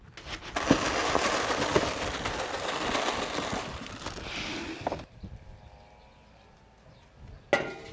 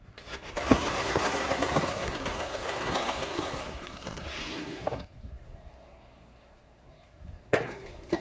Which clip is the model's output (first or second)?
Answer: second